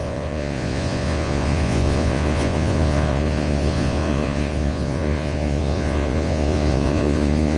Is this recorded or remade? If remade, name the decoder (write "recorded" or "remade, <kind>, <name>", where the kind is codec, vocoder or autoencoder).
remade, vocoder, Vocos